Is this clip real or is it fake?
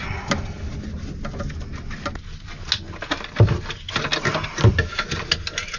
real